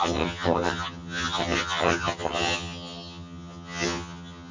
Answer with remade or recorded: remade